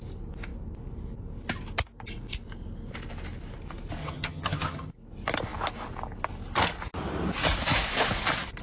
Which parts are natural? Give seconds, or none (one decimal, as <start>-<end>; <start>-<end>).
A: 0.0-4.0; 4.9-8.6

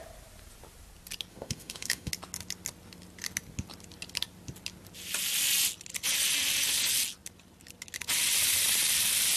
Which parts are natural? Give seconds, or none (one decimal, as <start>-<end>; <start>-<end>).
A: 0.0-1.3; 2.1-9.4